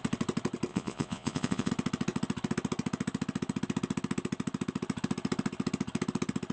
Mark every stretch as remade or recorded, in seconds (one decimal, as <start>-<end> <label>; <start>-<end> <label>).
0.0-0.7 recorded; 0.7-1.7 remade; 1.7-6.5 recorded